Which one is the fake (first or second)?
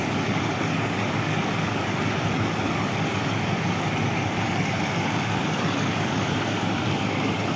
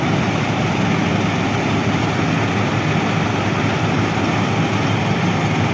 first